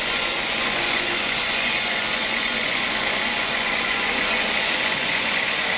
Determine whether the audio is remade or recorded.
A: remade